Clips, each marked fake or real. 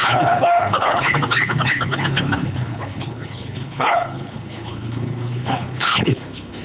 fake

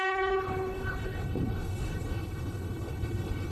fake